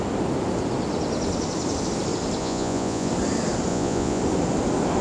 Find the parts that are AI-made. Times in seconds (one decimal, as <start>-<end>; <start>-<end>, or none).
2.4-3.1; 3.7-4.2